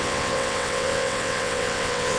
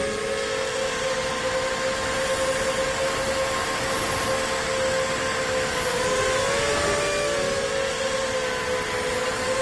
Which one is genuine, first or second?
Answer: second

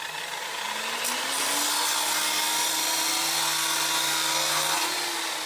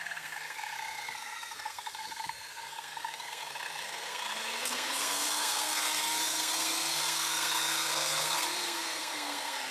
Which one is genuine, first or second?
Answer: first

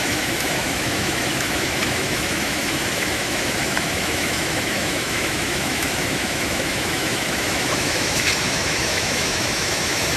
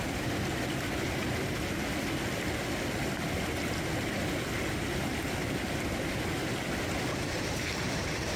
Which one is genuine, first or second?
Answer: second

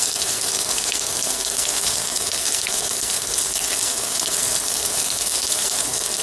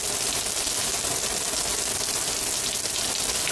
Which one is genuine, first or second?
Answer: second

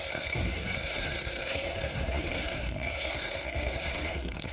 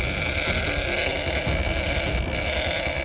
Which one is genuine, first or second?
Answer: second